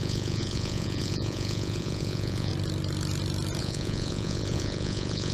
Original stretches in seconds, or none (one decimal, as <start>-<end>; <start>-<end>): 2.5-3.6